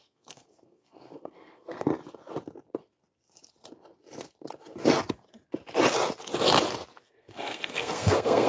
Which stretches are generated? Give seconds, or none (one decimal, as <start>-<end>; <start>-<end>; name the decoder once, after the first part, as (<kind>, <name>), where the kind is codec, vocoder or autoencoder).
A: 0.0-1.9 (codec, SNAC); 7.0-8.5